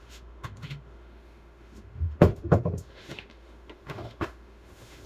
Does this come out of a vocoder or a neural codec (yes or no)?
yes